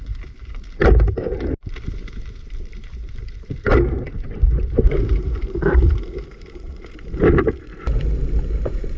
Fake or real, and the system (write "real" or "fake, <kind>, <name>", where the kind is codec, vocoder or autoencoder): fake, vocoder, BigVGAN v2